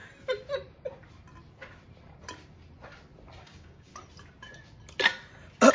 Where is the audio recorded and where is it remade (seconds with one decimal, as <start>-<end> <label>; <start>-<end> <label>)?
0.0-3.4 recorded; 3.4-3.9 remade; 3.9-5.7 recorded